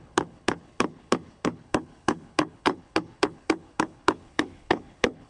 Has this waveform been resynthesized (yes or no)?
yes